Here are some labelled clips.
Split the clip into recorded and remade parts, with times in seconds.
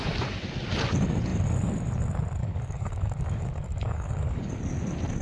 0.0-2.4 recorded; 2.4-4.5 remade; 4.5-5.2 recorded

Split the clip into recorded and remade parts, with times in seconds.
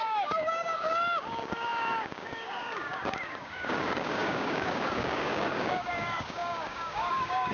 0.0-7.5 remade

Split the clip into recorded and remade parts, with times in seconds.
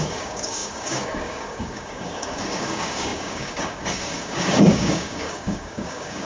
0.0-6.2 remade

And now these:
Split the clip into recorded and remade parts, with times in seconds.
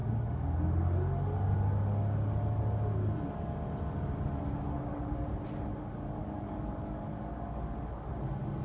0.0-6.2 recorded; 6.2-8.1 remade; 8.1-8.6 recorded